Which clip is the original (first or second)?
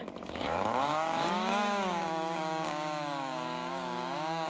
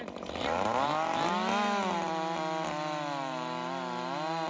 second